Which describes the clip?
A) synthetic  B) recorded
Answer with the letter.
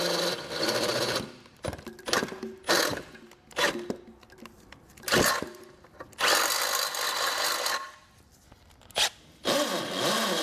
B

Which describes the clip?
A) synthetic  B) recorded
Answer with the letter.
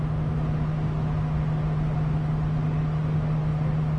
B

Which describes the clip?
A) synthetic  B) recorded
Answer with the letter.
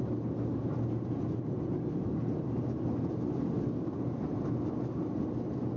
B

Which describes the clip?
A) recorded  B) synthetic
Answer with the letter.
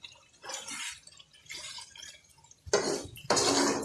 A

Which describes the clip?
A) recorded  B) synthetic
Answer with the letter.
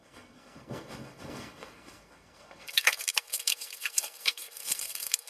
B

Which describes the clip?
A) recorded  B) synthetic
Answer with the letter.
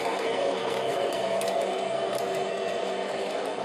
B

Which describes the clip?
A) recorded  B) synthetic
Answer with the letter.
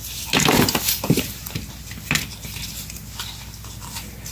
A